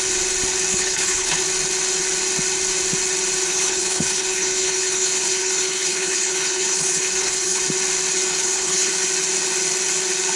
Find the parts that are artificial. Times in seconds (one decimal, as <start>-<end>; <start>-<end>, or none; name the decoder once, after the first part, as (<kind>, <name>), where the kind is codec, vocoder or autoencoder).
0.7-1.4 (codec, HILCodec); 3.5-7.6; 8.3-8.9